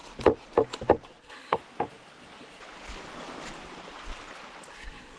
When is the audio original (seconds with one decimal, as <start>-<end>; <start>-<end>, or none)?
0.0-1.2; 1.6-4.7